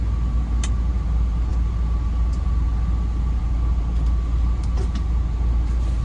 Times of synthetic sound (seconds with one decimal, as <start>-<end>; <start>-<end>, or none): none